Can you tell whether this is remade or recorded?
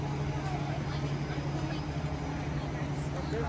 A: recorded